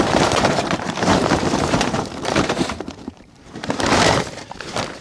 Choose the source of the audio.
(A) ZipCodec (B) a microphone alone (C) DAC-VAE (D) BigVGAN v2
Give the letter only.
D